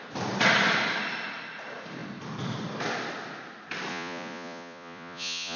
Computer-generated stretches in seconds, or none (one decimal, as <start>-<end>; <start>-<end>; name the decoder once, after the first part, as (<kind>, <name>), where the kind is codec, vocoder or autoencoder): 3.9-5.6 (vocoder, Vocos)